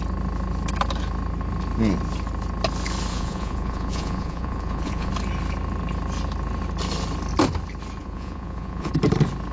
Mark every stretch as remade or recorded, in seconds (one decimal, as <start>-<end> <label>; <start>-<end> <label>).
0.0-3.1 recorded; 3.1-5.1 remade; 5.1-8.0 recorded; 8.0-8.9 remade; 8.9-9.5 recorded